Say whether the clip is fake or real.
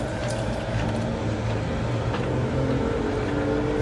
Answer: real